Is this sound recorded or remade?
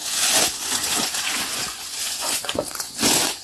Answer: remade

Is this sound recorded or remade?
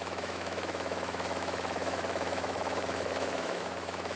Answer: remade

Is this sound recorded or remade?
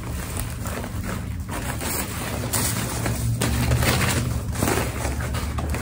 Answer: recorded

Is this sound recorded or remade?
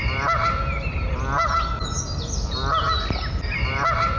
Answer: recorded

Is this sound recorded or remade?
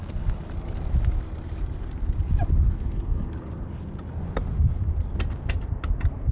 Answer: recorded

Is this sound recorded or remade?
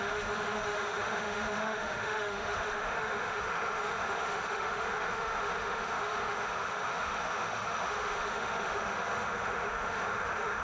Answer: remade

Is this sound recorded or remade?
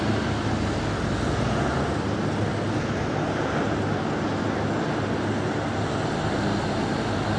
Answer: recorded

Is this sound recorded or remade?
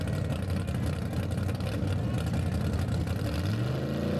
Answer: recorded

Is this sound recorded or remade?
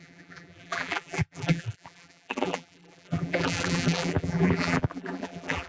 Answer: remade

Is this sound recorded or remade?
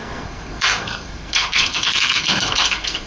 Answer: remade